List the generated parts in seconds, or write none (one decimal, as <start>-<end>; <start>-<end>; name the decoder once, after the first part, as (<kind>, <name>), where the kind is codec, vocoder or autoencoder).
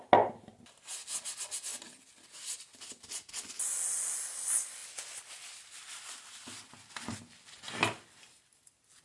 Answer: none